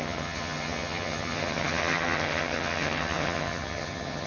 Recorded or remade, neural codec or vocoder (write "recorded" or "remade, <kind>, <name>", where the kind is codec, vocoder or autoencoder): remade, vocoder, HiFi-GAN